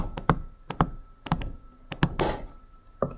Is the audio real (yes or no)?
yes